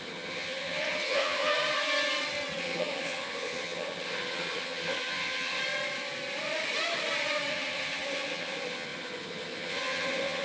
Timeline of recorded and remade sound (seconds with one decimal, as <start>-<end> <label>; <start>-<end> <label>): 0.0-1.5 remade; 1.5-2.6 recorded; 2.6-5.6 remade; 5.6-7.5 recorded; 7.5-10.4 remade